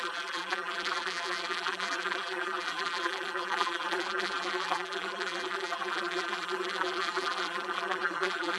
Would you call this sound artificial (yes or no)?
yes